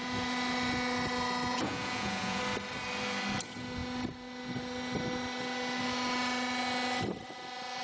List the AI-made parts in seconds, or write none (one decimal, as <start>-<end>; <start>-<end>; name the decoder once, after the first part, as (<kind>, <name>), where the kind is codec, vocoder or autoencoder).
1.5-2.4 (vocoder, Vocos)